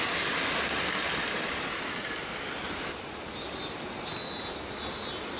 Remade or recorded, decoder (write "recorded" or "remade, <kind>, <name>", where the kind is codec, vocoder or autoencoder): recorded